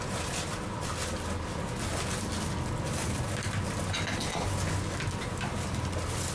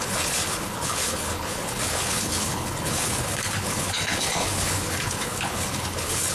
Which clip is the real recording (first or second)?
first